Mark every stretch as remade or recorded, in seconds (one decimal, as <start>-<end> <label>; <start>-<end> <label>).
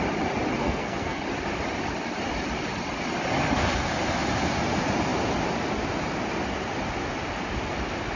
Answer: 0.0-0.6 recorded; 0.6-1.2 remade; 1.2-8.2 recorded